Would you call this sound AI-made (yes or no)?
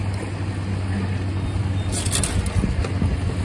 no